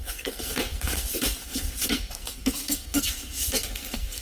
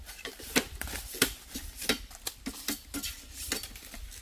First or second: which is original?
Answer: second